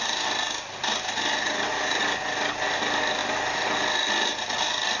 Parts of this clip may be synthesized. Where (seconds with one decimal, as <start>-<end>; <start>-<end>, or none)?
none

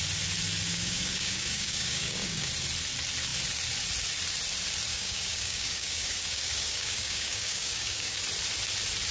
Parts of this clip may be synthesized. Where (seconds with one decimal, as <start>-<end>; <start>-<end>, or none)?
0.7-2.5; 4.9-8.2

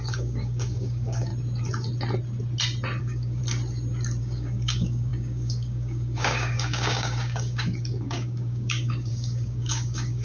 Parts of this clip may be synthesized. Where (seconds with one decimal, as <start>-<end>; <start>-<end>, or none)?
0.0-1.3; 3.0-3.4; 4.2-10.2

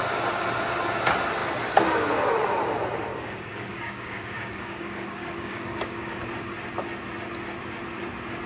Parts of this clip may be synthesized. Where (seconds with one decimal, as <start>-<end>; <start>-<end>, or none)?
3.1-6.2